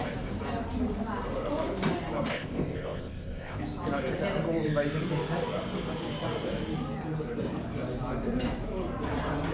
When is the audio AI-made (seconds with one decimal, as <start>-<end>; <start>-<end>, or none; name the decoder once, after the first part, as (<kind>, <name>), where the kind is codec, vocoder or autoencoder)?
2.3-3.6 (codec, ZipCodec)